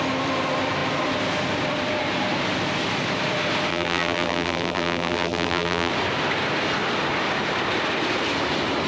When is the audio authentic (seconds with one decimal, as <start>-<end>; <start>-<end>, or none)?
0.0-3.7; 5.9-8.9

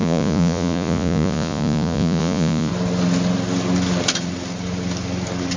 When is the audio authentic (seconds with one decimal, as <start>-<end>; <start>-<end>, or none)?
2.7-5.6

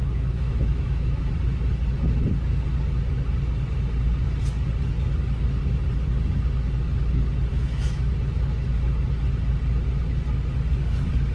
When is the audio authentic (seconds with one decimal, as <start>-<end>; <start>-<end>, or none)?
1.3-7.5; 8.1-11.3

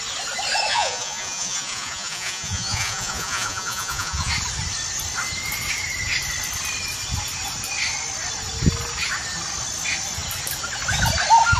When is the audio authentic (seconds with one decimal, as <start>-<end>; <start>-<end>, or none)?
0.0-0.7; 4.3-11.6